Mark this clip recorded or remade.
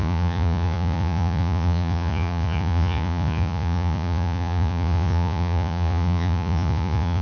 remade